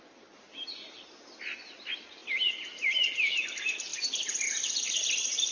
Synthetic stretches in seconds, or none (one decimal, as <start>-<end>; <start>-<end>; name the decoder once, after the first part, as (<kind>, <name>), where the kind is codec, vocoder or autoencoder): none

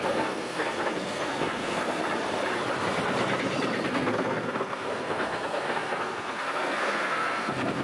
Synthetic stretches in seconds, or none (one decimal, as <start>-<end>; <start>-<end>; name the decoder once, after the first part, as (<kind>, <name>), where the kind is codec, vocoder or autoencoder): 0.0-2.0 (codec, SNAC); 3.9-7.8

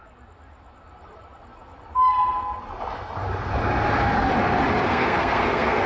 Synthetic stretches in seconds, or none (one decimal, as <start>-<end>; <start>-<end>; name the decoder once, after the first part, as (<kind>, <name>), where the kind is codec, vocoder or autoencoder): 4.9-5.9 (codec, SNAC)